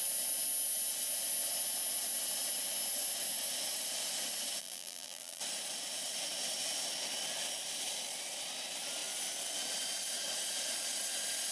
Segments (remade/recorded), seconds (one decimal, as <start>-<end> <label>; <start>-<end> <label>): 0.0-4.6 recorded; 4.6-5.4 remade; 5.4-11.5 recorded